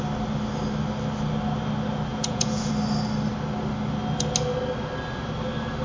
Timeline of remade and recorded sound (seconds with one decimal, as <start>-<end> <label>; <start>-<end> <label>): 0.0-2.1 recorded; 2.1-2.7 remade; 2.7-5.8 recorded